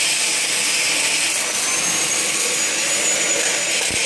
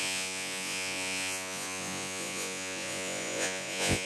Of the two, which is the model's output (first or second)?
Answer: second